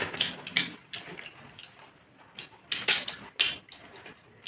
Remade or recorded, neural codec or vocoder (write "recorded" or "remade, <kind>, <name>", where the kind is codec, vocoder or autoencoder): recorded